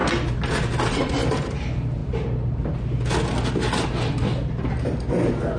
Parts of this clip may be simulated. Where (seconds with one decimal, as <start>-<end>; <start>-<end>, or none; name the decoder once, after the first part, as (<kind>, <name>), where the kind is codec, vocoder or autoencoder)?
none